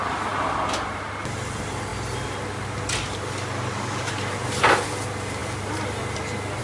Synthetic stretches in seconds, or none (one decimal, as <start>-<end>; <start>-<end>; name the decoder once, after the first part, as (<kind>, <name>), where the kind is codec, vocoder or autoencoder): none